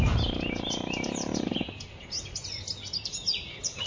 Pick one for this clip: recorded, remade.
recorded